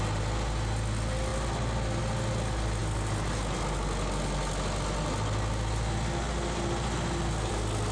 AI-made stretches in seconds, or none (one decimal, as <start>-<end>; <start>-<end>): none